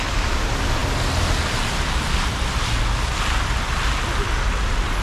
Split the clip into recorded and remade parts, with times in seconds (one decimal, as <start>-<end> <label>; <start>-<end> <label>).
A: 0.0-5.0 recorded